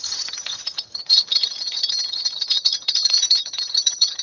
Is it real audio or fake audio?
fake